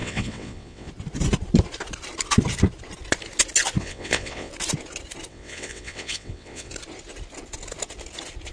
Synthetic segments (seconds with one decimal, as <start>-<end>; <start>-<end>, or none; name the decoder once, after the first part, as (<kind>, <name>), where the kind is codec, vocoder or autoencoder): 0.0-0.9 (vocoder, WaveNeXt); 3.8-4.5; 5.3-6.7